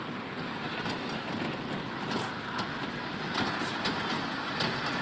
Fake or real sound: real